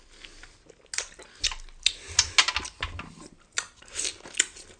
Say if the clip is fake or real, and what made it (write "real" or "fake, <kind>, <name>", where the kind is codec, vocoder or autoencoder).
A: real